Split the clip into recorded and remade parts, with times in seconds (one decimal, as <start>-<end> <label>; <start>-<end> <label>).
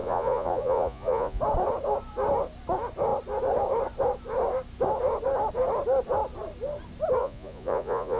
0.0-1.4 remade; 1.4-7.2 recorded; 7.2-8.2 remade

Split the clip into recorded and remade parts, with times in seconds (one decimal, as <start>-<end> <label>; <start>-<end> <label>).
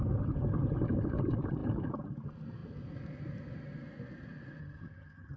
0.0-4.6 recorded; 4.6-5.4 remade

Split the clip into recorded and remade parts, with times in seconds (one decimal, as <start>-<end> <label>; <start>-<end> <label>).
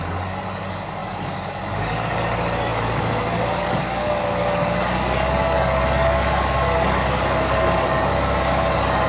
0.0-9.1 remade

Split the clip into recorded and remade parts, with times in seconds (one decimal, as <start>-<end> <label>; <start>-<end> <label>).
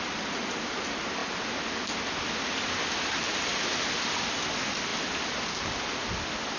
0.0-4.9 remade; 4.9-5.8 recorded; 5.8-6.6 remade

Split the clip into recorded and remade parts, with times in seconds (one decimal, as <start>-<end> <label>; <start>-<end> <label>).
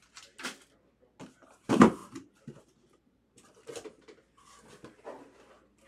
0.0-5.9 recorded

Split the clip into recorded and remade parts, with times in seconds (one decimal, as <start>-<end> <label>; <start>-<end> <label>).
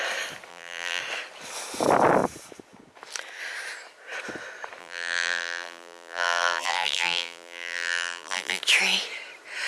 0.0-0.5 recorded; 0.5-1.0 remade; 1.0-4.8 recorded; 4.8-8.6 remade; 8.6-9.7 recorded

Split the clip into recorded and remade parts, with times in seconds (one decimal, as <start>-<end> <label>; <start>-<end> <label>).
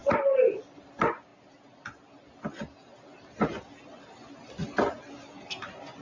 0.0-6.0 recorded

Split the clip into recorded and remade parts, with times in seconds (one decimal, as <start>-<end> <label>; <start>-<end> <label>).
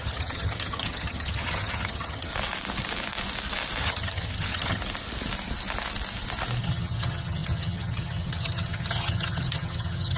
0.0-2.3 remade; 2.3-3.8 recorded; 3.8-4.8 remade; 4.8-6.6 recorded; 6.6-10.2 remade